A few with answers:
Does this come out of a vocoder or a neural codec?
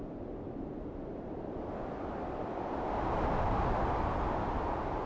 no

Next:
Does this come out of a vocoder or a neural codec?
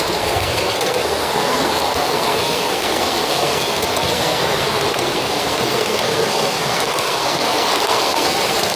yes